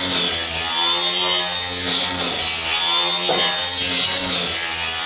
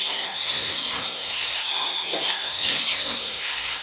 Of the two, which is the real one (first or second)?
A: first